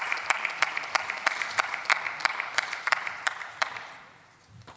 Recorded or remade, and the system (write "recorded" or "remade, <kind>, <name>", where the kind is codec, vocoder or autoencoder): remade, vocoder, BigVGAN v2